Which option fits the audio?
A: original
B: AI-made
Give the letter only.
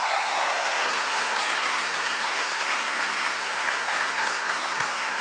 B